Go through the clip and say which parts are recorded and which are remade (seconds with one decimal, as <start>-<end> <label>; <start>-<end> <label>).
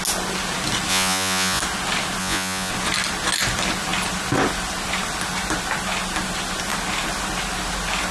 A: 0.0-0.9 recorded; 0.9-1.6 remade; 1.6-2.2 recorded; 2.2-2.7 remade; 2.7-8.1 recorded